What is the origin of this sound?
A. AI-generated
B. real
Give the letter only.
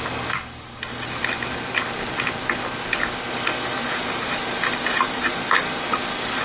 B